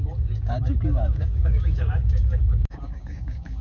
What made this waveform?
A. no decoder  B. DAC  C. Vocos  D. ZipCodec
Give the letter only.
B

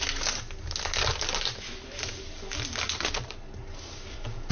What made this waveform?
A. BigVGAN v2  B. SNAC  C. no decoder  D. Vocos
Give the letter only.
C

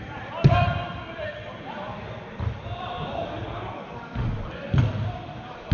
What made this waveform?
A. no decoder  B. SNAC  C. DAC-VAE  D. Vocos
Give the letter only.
A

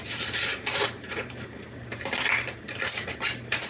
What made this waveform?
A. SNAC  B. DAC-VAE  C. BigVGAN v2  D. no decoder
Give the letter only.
C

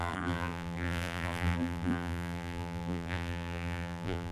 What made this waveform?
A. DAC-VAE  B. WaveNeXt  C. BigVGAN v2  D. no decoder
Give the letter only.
C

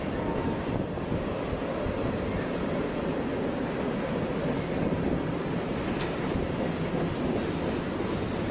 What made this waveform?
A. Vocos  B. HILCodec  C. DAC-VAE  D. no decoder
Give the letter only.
D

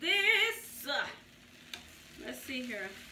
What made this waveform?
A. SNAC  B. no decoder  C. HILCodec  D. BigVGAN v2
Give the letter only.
B